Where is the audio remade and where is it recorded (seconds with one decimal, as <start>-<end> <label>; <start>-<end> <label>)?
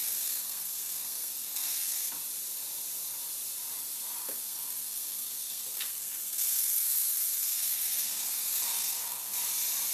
0.0-2.1 remade; 2.1-4.2 recorded; 4.2-9.3 remade; 9.3-9.9 recorded